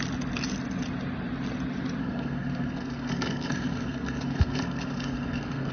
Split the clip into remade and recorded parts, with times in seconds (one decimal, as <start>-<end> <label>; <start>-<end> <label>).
0.0-2.0 recorded; 2.0-5.7 remade

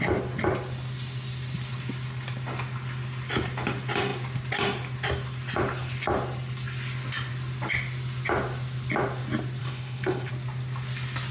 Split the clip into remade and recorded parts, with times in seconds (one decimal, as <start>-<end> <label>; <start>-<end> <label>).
0.0-9.6 recorded; 9.6-10.3 remade; 10.3-11.3 recorded

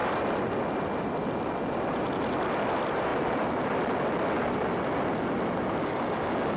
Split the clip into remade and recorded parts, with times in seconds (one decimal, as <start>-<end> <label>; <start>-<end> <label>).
0.0-6.6 recorded

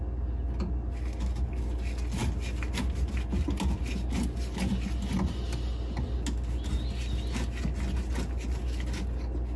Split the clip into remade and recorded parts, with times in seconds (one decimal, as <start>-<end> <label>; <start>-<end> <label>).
0.0-9.6 recorded

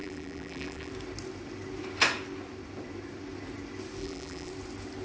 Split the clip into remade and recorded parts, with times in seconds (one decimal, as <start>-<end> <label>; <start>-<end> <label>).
0.0-0.9 remade; 0.9-4.0 recorded; 4.0-4.5 remade; 4.5-5.0 recorded

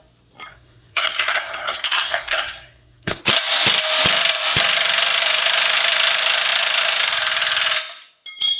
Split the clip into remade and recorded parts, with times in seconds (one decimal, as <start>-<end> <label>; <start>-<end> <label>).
0.0-0.5 recorded; 0.5-3.2 remade; 3.2-8.6 recorded

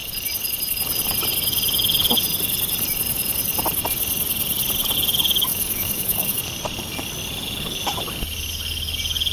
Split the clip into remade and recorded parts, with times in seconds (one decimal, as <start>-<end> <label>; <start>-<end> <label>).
0.0-5.5 recorded; 5.5-6.4 remade; 6.4-9.3 recorded

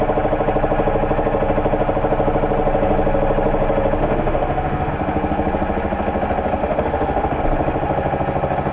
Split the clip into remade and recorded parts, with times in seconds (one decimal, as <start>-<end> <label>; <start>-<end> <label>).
0.0-4.0 recorded; 4.0-4.9 remade; 4.9-6.6 recorded; 6.6-7.4 remade; 7.4-8.7 recorded